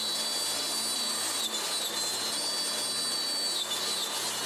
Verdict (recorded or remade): recorded